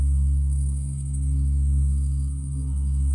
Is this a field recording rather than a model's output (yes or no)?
no